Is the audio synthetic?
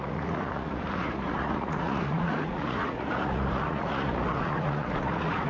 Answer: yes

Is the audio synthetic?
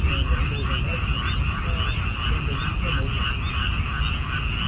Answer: no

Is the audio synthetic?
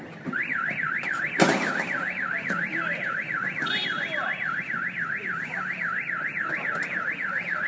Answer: yes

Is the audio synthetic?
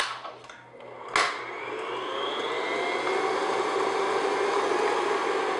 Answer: no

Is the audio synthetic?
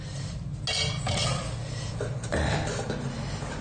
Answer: no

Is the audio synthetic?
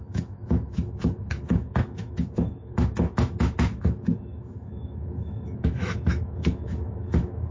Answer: yes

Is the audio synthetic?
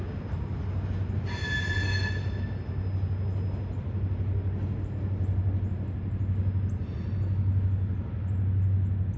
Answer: no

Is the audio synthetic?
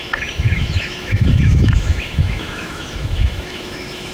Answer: yes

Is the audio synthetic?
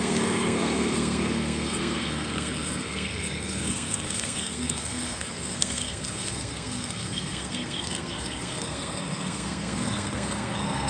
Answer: yes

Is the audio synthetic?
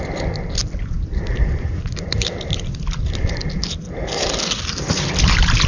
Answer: no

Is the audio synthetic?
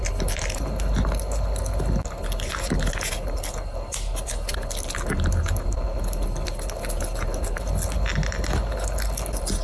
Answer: no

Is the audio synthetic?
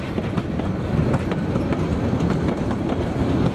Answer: no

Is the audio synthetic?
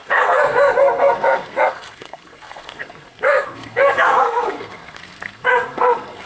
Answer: yes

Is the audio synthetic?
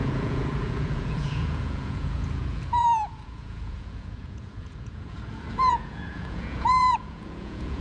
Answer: yes